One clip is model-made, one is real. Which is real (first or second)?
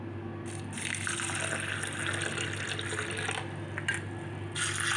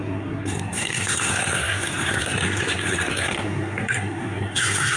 first